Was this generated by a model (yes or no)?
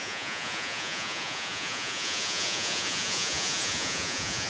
yes